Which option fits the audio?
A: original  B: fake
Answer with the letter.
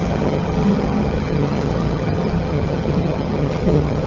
B